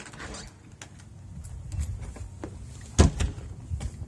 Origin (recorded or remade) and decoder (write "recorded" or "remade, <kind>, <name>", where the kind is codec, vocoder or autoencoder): recorded